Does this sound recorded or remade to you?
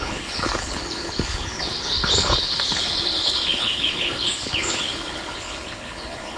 remade